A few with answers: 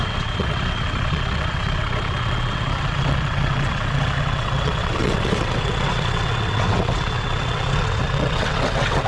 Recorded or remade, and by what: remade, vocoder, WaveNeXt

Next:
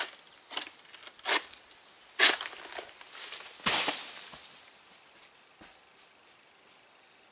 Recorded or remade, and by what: recorded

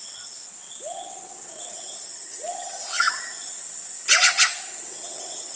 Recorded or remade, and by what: remade, vocoder, WaveNeXt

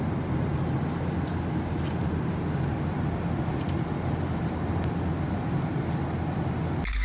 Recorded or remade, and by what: recorded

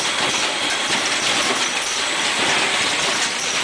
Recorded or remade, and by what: recorded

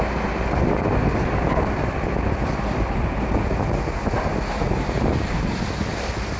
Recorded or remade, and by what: recorded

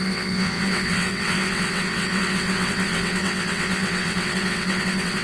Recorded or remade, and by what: remade, vocoder, WaveNeXt